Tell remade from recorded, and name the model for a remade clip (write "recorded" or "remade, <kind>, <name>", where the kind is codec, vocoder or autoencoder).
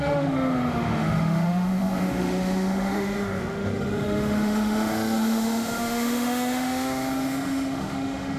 remade, autoencoder, DAC-VAE